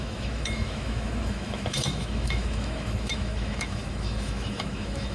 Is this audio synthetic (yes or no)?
yes